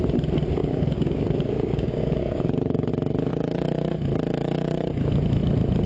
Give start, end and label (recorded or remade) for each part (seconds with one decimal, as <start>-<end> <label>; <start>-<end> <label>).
0.0-0.6 recorded; 0.6-2.9 remade; 2.9-3.3 recorded; 3.3-3.9 remade; 3.9-4.4 recorded; 4.4-4.9 remade; 4.9-5.9 recorded